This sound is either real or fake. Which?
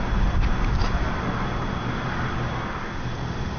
real